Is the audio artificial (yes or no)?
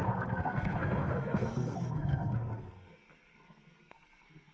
yes